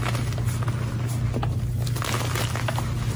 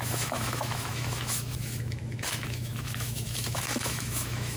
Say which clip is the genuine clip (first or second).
first